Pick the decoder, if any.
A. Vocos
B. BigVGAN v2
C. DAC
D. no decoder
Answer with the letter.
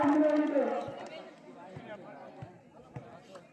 B